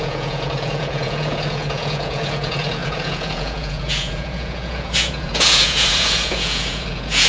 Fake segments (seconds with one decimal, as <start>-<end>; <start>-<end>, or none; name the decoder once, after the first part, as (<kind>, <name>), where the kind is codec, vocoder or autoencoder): 0.0-7.3 (vocoder, Vocos)